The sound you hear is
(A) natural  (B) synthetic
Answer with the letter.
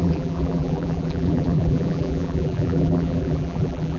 B